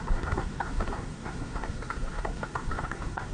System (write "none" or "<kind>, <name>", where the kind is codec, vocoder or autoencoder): codec, SNAC